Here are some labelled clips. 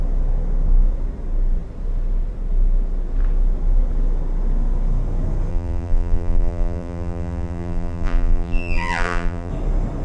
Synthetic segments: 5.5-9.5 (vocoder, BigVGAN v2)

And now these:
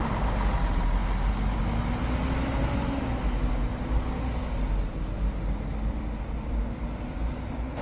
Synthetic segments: 5.7-7.2 (vocoder, BigVGAN v2)

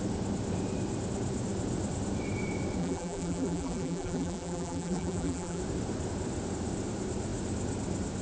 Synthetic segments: 2.8-5.6 (vocoder, BigVGAN v2)

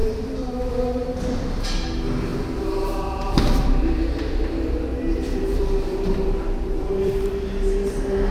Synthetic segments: 0.0-0.7 (vocoder, BigVGAN v2); 2.3-7.3

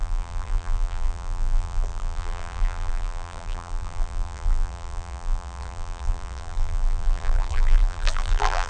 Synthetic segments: 0.0-8.7 (vocoder, BigVGAN v2)

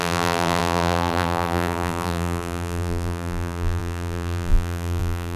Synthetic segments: 0.0-5.4 (vocoder, BigVGAN v2)

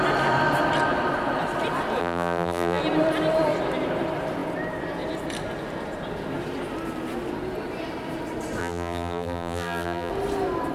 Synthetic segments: 2.0-2.8 (vocoder, BigVGAN v2); 8.6-10.1

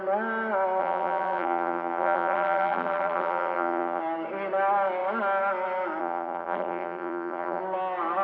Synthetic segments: 0.8-4.0 (vocoder, BigVGAN v2); 6.0-7.6